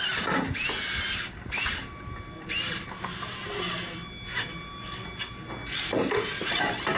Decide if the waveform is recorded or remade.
recorded